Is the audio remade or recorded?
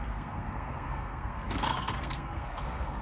remade